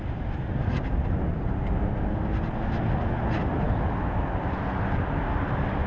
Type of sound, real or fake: real